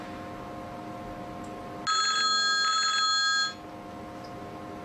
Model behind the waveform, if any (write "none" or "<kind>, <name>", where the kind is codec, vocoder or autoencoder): none